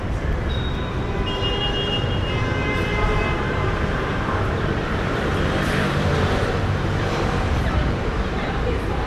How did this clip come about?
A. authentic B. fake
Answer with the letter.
B